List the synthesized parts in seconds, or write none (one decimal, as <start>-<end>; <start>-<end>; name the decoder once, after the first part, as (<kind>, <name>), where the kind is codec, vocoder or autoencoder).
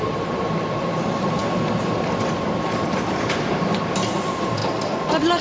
0.0-1.4 (vocoder, BigVGAN v2); 3.4-4.6